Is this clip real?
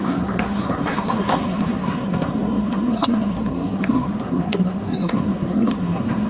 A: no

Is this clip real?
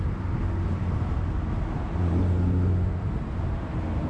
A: yes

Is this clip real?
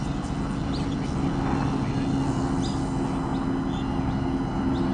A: yes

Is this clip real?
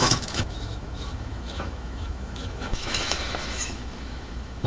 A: no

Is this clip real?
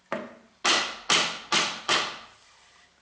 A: yes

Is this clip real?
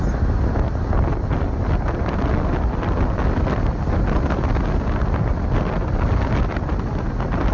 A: yes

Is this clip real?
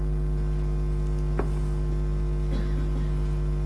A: yes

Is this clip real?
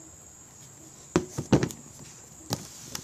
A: yes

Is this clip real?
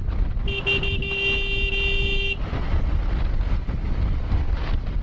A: yes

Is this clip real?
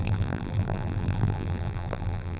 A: no